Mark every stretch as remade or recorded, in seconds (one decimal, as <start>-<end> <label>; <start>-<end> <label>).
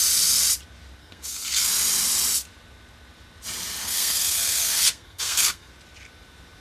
0.0-1.0 recorded; 1.0-1.7 remade; 1.7-3.8 recorded; 3.8-5.7 remade; 5.7-6.6 recorded